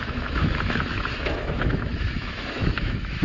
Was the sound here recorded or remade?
remade